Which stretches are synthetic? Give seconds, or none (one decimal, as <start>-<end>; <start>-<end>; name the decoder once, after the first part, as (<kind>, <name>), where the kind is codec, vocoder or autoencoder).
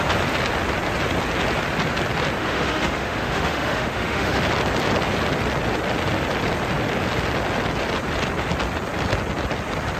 2.4-4.4 (autoencoder, DAC-VAE)